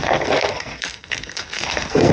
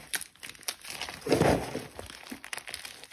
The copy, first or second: first